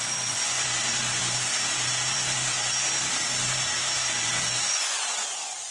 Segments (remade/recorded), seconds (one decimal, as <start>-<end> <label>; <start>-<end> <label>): 0.0-0.8 remade; 0.8-4.2 recorded; 4.2-5.7 remade